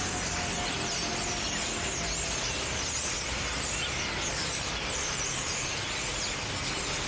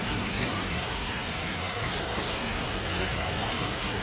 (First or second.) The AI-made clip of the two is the second